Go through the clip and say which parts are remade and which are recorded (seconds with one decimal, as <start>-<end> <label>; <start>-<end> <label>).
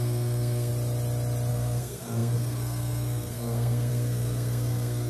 0.0-0.7 remade; 0.7-1.5 recorded; 1.5-5.1 remade